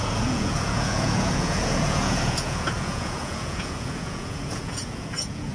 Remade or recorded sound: remade